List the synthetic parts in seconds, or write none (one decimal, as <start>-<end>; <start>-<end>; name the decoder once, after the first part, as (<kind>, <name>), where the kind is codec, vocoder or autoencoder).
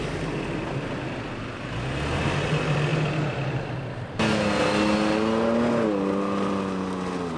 none